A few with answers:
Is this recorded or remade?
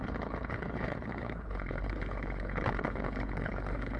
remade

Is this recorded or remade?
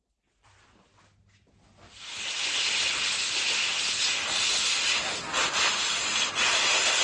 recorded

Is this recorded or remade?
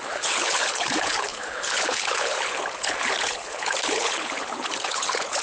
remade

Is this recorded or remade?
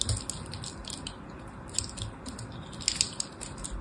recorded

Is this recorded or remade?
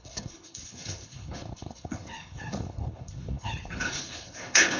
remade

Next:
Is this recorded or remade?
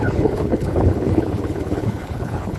remade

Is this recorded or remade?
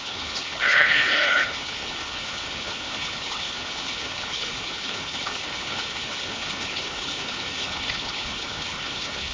remade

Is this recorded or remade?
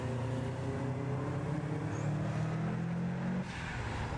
recorded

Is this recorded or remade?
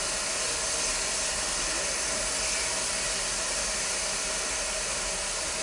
recorded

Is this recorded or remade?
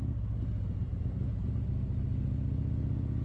recorded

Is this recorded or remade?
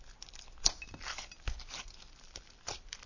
recorded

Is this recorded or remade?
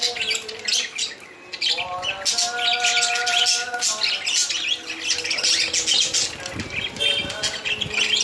recorded